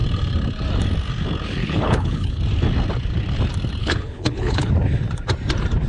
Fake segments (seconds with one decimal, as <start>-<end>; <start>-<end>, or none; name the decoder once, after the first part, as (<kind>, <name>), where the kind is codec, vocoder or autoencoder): 1.6-2.4 (codec, HILCodec); 3.8-4.7